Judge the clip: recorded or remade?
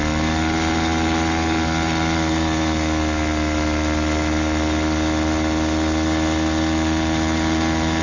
recorded